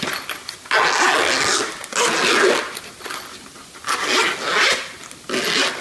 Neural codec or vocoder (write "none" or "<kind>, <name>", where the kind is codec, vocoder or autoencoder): none